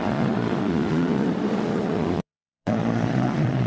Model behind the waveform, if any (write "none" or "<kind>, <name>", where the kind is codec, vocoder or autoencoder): vocoder, Vocos